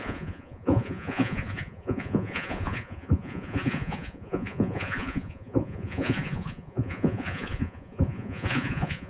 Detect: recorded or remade remade